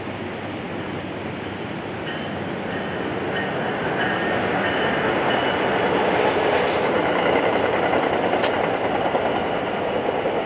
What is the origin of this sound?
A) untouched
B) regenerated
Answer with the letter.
A